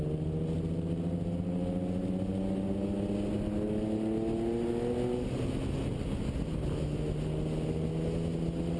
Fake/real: real